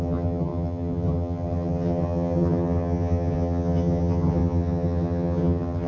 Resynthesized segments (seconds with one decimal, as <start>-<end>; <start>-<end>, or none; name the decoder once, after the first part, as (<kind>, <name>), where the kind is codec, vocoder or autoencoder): 0.0-5.9 (vocoder, HiFi-GAN)